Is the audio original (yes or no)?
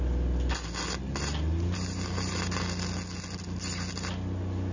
yes